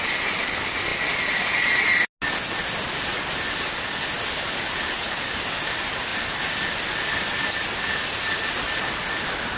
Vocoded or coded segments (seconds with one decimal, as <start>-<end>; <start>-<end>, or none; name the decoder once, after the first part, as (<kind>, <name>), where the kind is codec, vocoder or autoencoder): none